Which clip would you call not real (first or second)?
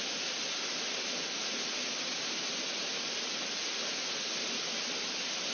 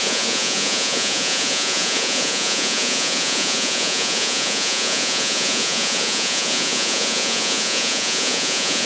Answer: second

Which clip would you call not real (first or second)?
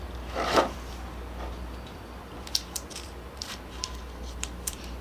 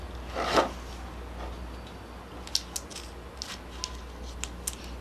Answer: first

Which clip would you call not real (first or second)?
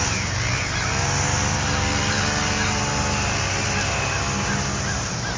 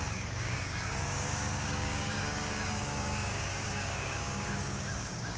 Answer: second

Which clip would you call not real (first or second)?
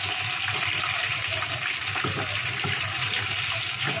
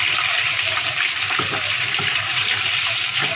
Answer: second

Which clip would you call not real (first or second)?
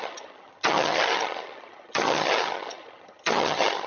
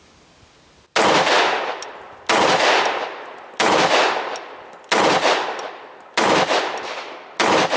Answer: first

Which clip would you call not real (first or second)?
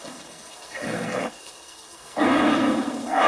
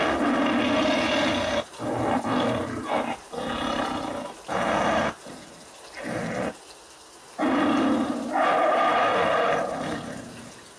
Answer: first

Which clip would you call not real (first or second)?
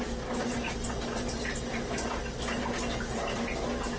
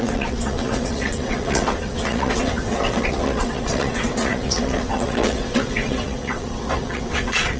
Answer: second